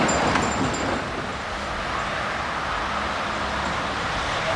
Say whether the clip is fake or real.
real